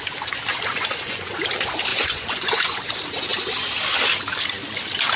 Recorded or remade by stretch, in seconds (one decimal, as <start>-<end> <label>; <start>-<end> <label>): 0.0-0.5 recorded; 0.5-1.3 remade; 1.3-1.9 recorded; 1.9-2.9 remade; 2.9-5.2 recorded